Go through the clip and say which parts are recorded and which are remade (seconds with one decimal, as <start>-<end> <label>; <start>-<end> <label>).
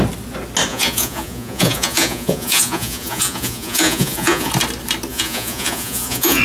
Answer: 0.0-0.7 recorded; 0.7-4.5 remade; 4.5-5.1 recorded; 5.1-6.4 remade